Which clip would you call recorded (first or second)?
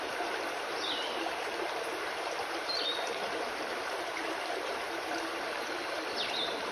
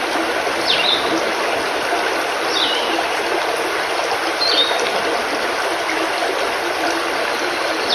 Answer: second